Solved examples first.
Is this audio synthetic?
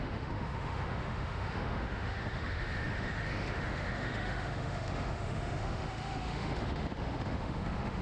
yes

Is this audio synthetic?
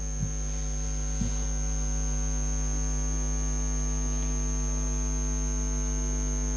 no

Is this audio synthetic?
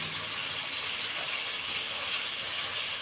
no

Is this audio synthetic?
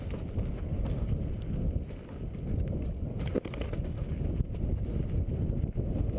no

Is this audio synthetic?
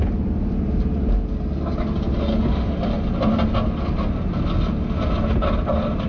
no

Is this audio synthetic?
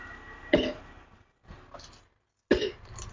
no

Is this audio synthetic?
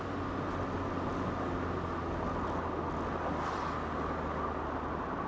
no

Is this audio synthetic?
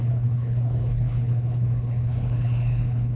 yes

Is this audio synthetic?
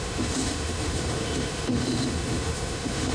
yes